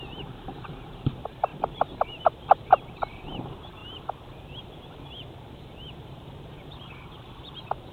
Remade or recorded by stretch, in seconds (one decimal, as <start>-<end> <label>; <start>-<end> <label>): 0.0-7.9 remade